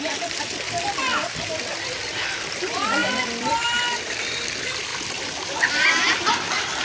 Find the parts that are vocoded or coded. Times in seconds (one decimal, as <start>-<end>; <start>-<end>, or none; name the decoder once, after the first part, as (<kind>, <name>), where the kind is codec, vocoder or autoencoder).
3.0-4.2 (vocoder, BigVGAN v2); 4.9-6.8